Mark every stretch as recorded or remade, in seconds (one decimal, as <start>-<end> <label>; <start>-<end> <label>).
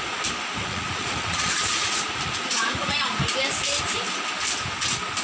0.0-0.6 recorded; 0.6-3.2 remade; 3.2-5.2 recorded